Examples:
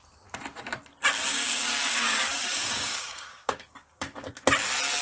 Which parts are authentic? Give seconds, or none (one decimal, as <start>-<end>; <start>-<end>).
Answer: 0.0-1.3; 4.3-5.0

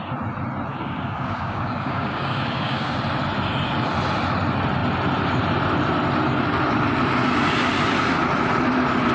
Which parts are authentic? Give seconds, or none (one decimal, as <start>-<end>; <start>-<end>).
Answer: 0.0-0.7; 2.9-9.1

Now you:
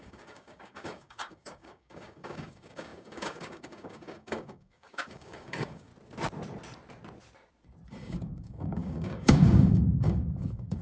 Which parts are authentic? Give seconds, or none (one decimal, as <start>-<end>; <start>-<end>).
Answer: 5.9-7.9

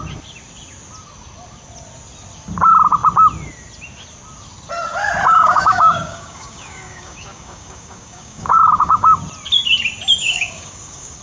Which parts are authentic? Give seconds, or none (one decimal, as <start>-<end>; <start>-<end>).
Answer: 0.0-5.3; 9.2-10.2